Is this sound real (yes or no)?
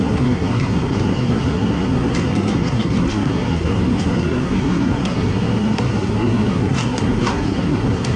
no